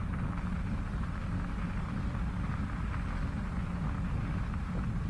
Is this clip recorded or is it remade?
recorded